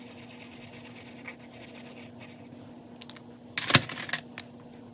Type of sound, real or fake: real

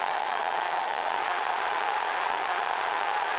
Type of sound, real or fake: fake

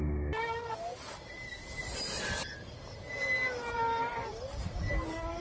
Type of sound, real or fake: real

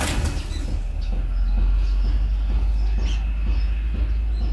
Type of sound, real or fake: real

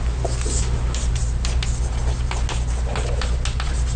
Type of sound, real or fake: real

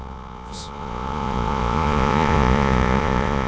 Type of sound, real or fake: fake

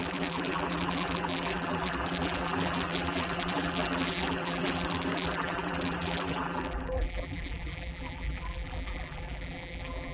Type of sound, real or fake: fake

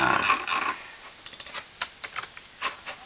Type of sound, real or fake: real